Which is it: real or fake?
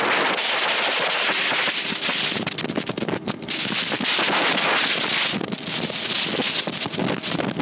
real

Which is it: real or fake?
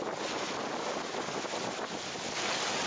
real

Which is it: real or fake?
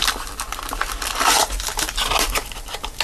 real